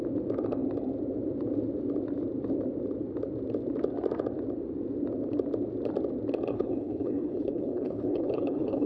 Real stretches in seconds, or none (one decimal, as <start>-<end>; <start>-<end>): 0.0-6.5